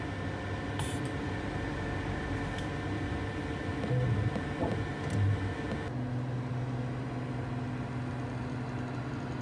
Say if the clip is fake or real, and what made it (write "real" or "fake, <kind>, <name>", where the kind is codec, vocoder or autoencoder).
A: real